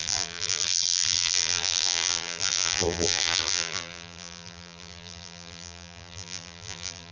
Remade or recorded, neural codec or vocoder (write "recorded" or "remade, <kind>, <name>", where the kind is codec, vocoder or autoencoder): remade, vocoder, BigVGAN v2